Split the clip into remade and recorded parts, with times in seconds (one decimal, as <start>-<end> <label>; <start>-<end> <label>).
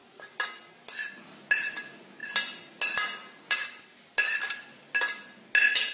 0.0-5.9 recorded